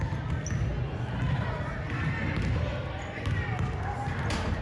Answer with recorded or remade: recorded